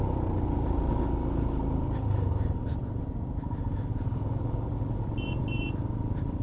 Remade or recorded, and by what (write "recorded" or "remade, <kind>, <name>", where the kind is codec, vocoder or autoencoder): recorded